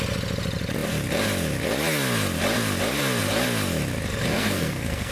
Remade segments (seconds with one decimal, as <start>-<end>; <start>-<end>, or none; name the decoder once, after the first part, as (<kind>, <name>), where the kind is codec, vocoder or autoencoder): 4.3-5.1 (codec, SNAC)